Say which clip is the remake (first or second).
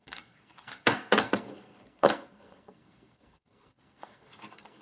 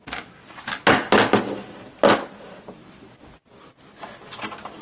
first